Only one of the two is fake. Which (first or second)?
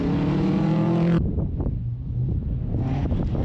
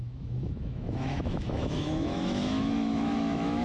second